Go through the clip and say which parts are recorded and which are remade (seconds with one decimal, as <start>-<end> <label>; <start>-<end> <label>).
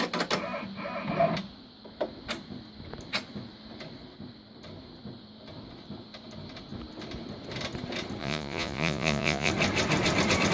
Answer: 0.0-8.2 recorded; 8.2-9.5 remade; 9.5-10.5 recorded